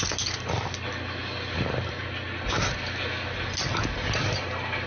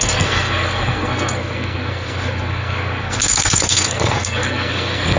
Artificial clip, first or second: second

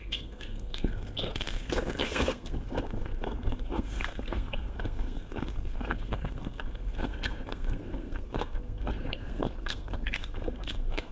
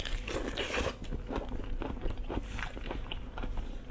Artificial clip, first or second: first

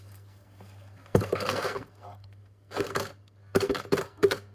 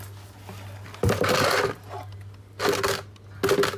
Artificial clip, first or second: first